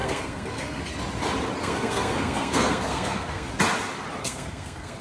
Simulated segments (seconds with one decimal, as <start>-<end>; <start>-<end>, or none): 0.0-0.8; 1.6-3.5; 4.2-5.0